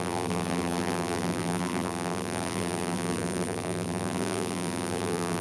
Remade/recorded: remade